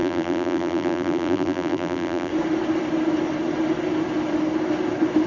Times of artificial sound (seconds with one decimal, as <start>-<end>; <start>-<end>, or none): 0.0-2.3